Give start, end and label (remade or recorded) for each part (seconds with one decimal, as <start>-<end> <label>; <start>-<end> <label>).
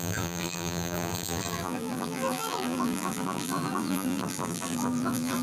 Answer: 0.0-5.4 remade